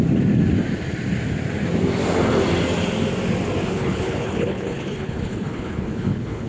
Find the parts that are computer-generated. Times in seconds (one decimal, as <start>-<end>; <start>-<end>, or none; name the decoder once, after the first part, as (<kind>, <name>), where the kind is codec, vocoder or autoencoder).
3.7-6.5 (codec, HILCodec)